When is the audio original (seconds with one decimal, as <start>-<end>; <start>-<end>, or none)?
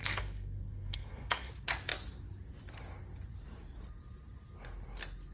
1.5-5.3